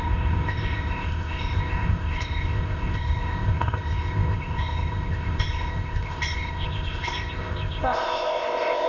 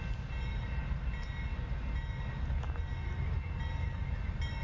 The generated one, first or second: first